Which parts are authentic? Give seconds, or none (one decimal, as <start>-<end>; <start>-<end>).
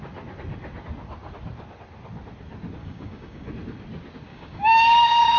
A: 0.0-2.8; 3.5-4.3